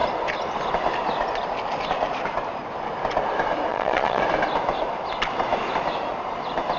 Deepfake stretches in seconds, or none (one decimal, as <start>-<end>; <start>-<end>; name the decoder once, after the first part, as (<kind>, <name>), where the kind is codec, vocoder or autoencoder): 3.7-4.2 (vocoder, Vocos)